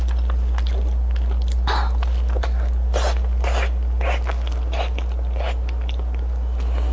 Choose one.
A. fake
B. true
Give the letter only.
B